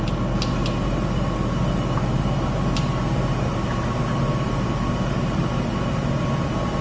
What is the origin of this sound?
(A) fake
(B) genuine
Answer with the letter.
B